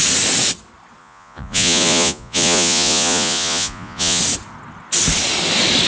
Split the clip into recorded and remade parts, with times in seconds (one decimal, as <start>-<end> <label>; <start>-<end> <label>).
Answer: 0.0-1.0 recorded; 1.0-4.2 remade; 4.2-5.9 recorded